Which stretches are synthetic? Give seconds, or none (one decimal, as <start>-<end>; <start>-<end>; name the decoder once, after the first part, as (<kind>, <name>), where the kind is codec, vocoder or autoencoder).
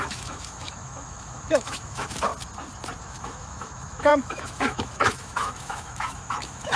0.0-2.3 (autoencoder, DAC-VAE); 3.0-6.8